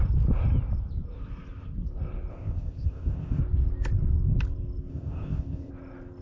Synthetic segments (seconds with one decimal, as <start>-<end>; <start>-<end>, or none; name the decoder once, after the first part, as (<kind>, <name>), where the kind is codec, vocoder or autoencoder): 2.3-3.4 (codec, ZipCodec); 4.9-5.7